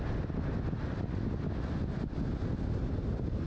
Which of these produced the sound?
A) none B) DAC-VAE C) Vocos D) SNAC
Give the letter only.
A